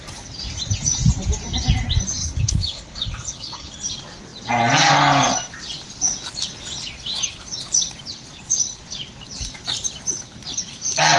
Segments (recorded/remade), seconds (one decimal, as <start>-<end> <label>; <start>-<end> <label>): 0.0-2.2 recorded; 2.2-3.7 remade; 3.7-11.2 recorded

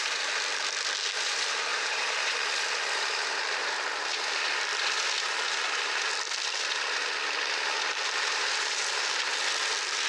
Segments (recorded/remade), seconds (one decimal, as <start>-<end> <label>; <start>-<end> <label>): 0.0-1.7 recorded; 1.7-2.4 remade; 2.4-10.1 recorded

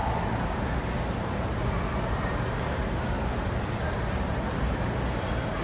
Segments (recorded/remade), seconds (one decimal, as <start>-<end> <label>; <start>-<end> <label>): 0.0-5.6 recorded